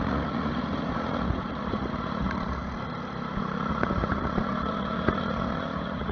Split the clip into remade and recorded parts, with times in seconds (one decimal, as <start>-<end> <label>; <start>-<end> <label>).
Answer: 0.0-2.6 remade; 2.6-3.4 recorded; 3.4-6.1 remade